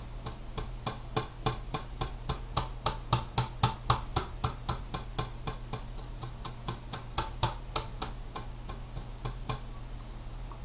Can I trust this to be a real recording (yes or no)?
yes